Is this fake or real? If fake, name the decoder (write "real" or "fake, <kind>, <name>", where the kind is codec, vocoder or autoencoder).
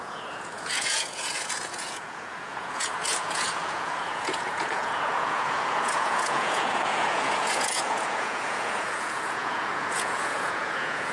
fake, vocoder, Vocos